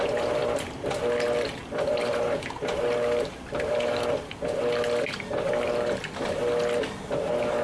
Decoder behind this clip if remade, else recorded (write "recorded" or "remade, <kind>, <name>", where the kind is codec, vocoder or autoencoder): recorded